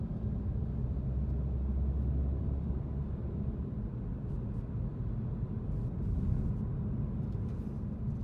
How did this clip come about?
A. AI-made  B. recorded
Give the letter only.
B